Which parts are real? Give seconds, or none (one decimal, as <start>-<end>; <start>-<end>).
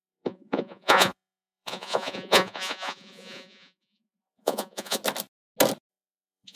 5.0-5.9